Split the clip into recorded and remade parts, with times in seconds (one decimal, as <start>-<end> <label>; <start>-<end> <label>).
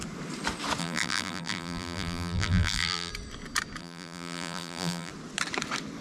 0.0-0.8 recorded; 0.8-3.1 remade; 3.1-3.8 recorded; 3.8-5.1 remade; 5.1-6.0 recorded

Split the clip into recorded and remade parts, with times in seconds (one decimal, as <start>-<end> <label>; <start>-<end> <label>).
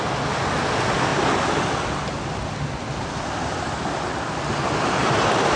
0.0-5.6 recorded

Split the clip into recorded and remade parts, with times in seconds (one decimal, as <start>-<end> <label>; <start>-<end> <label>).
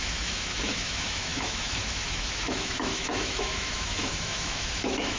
0.0-5.2 remade